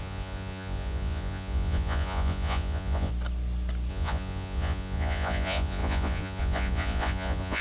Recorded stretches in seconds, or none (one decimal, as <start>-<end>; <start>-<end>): 3.1-3.9